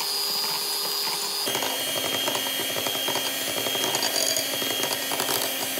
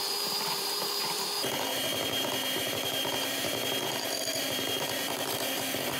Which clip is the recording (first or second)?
first